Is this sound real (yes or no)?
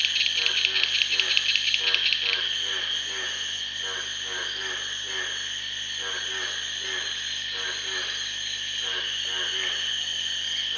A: yes